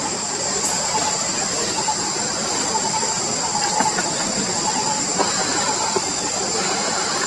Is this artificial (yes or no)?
no